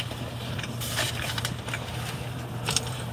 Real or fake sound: fake